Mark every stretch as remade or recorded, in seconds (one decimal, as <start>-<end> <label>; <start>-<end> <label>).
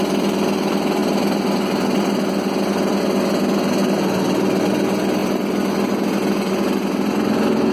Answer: 0.0-7.7 recorded